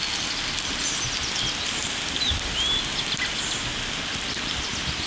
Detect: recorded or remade recorded